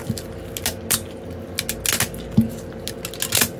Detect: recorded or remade recorded